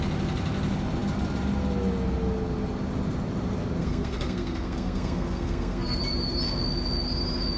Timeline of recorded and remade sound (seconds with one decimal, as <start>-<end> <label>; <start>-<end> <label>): 0.0-3.8 recorded; 3.8-6.0 remade; 6.0-7.6 recorded